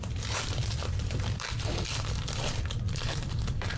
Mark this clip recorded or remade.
remade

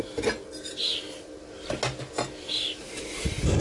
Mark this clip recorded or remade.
recorded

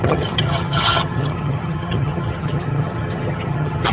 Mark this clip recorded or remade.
remade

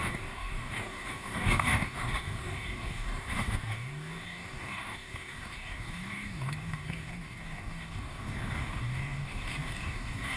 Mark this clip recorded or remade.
remade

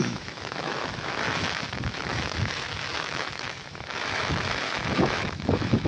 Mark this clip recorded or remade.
remade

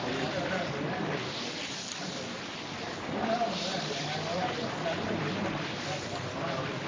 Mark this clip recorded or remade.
remade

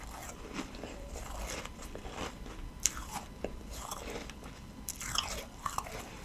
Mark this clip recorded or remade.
remade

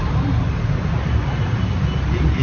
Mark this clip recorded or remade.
recorded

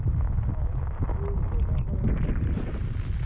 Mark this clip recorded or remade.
recorded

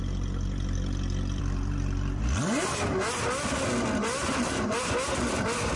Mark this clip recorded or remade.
recorded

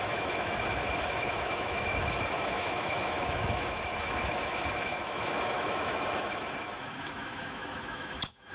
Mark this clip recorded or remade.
remade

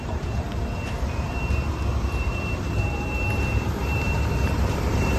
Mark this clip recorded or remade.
remade